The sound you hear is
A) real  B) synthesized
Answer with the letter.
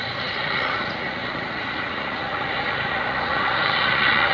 B